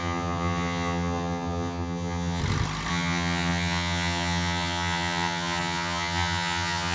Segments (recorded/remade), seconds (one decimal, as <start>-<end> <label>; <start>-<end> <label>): 0.0-2.4 remade; 2.4-2.9 recorded; 2.9-6.9 remade